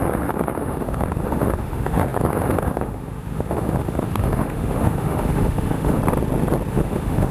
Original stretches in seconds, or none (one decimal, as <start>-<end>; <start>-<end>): 6.0-6.7